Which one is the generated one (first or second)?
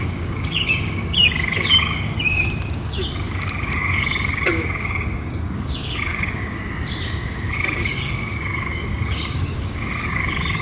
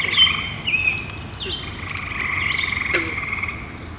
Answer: first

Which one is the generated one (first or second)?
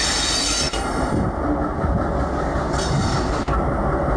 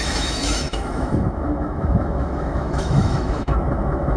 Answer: second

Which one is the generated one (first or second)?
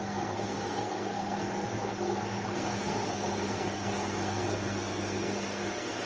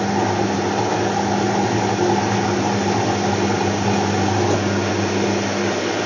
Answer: first